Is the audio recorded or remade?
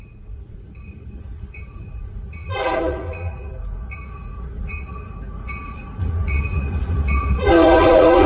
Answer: remade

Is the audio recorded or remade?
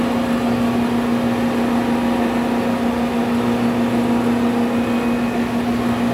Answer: recorded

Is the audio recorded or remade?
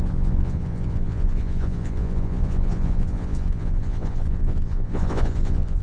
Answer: remade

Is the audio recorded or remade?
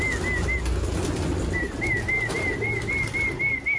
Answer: recorded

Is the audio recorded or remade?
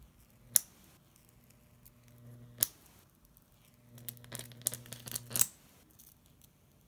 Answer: recorded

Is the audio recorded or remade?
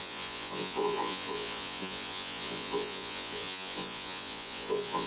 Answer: remade